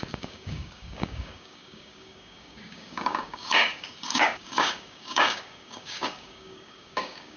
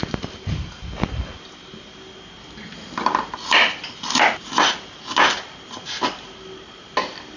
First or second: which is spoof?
first